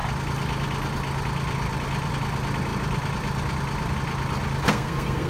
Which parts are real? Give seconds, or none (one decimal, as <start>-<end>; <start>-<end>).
0.0-4.6